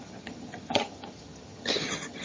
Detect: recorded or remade remade